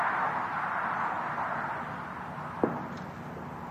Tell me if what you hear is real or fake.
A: real